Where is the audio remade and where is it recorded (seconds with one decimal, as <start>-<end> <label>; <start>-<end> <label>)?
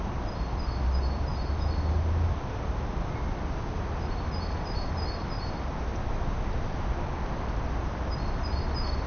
0.0-9.1 recorded